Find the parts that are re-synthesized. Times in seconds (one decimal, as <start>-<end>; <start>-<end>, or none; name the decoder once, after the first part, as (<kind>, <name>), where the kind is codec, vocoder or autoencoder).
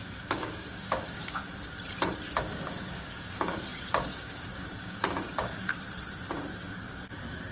0.0-1.4 (codec, DAC); 2.4-5.7; 6.5-7.5